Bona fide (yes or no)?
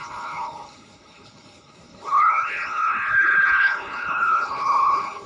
no